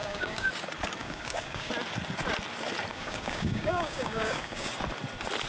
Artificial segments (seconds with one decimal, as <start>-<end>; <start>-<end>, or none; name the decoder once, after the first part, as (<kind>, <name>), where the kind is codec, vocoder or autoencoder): 0.0-0.5 (codec, DAC); 1.0-1.7; 2.9-4.7